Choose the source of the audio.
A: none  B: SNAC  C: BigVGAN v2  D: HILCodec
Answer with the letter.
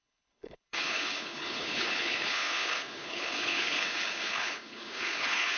D